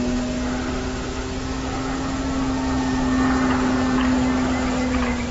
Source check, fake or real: real